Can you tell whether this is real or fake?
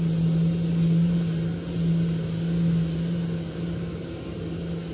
real